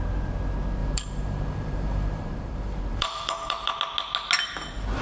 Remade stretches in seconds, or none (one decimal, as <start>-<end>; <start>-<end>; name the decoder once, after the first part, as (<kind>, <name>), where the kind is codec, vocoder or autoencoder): 0.8-3.8 (vocoder, BigVGAN v2)